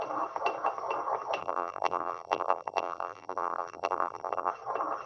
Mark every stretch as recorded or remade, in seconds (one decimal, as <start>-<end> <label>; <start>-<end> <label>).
0.0-1.4 recorded; 1.4-4.5 remade; 4.5-5.1 recorded